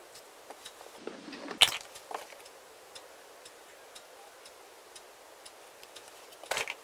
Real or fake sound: real